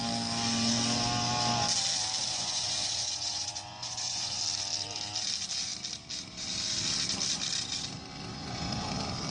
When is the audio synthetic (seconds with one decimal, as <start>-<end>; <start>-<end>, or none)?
2.2-4.4; 8.3-8.9